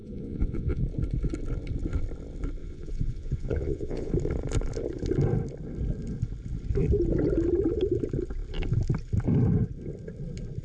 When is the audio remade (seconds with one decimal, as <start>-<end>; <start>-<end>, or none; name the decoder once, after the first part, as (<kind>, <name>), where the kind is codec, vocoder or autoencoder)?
0.0-0.8 (vocoder, Vocos); 2.6-4.1